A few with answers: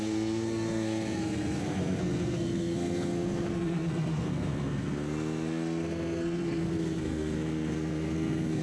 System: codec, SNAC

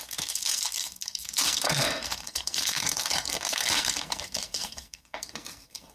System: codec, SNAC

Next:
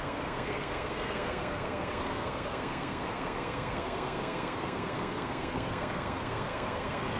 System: codec, SNAC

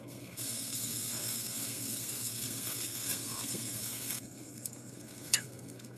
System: codec, SNAC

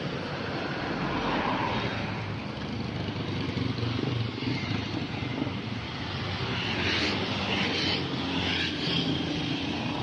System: none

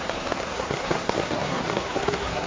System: codec, SNAC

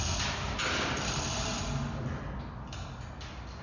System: none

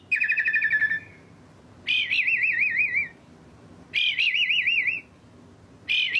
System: none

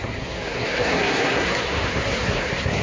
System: codec, SNAC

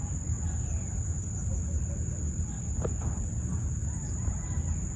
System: none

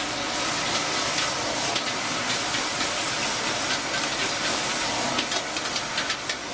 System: none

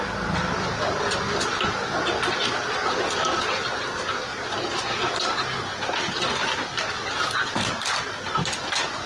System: none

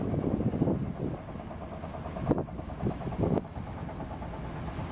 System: none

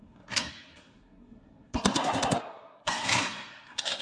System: codec, SNAC